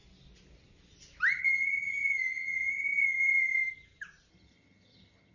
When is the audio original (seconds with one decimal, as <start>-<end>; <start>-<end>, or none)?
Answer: 0.0-1.4; 3.6-4.3